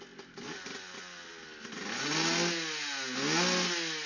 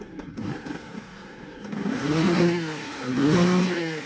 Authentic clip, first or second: first